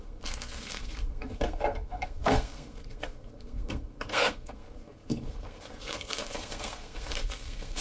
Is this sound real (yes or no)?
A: no